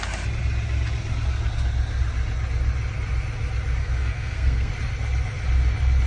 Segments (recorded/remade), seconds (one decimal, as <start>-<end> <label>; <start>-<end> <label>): 0.0-3.8 recorded; 3.8-4.7 remade; 4.7-6.1 recorded